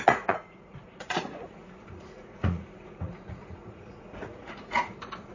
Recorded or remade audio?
remade